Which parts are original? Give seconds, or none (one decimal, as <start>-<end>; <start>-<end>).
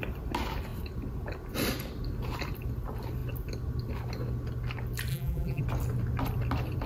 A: 0.0-5.1; 5.6-6.9